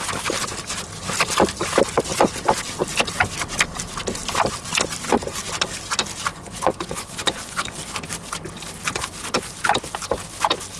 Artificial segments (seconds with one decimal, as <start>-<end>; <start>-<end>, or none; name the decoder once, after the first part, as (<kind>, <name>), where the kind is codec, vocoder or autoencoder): 6.3-7.8 (vocoder, Vocos)